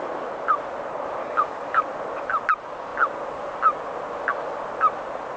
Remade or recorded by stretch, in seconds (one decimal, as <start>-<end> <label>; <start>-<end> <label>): 0.0-1.2 recorded; 1.2-1.8 remade; 1.8-5.4 recorded